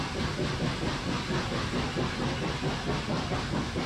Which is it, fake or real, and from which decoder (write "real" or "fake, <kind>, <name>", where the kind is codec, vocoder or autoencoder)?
real